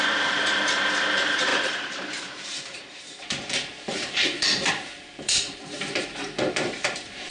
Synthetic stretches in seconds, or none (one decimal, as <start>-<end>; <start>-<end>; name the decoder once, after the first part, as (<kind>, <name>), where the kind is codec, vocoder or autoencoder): 0.0-7.3 (vocoder, BigVGAN v2)